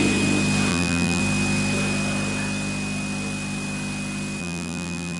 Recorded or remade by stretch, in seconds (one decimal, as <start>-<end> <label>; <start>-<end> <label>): 0.0-0.7 recorded; 0.7-1.2 remade; 1.2-4.4 recorded; 4.4-5.2 remade